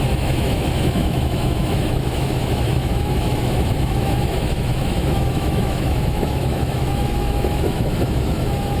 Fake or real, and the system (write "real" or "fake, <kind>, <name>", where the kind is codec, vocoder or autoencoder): fake, autoencoder, DAC-VAE